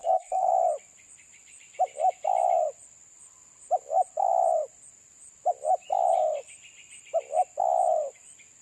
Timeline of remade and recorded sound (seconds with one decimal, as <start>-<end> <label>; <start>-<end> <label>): 0.0-0.5 remade; 0.5-8.6 recorded